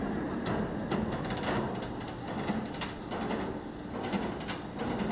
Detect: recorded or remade recorded